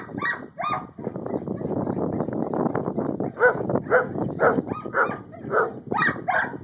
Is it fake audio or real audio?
real